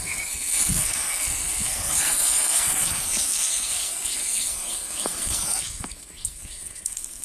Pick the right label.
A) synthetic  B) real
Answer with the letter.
A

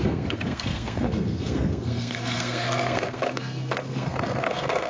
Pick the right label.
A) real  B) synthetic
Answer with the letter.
B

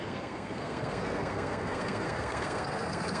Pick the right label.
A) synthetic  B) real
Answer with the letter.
A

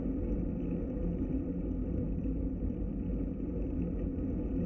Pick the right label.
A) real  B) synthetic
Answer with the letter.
A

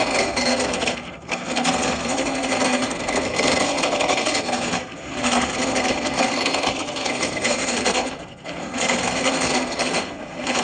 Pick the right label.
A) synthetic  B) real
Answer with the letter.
A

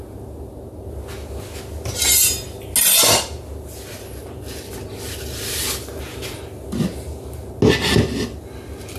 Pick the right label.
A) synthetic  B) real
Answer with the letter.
B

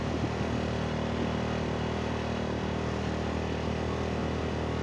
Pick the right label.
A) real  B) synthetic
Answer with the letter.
A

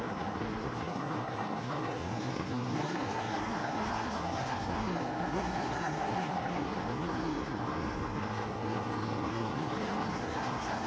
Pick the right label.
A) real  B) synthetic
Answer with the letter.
B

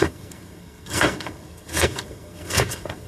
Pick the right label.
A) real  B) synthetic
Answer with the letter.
B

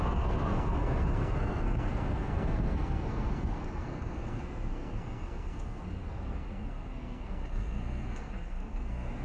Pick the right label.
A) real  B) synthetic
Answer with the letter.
B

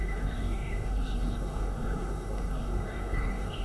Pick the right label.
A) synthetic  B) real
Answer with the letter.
A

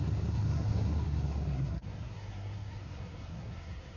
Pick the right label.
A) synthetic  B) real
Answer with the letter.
A